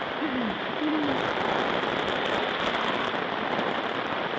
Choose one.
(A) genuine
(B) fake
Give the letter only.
B